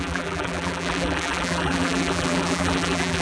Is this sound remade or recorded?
remade